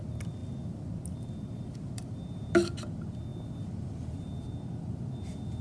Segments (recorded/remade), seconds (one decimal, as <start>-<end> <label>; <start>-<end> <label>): 0.0-5.6 recorded